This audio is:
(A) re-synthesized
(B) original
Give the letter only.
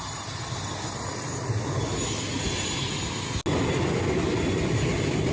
B